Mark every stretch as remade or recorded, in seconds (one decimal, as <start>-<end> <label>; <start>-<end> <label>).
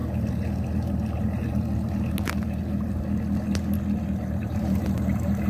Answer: 0.0-4.4 recorded; 4.4-5.5 remade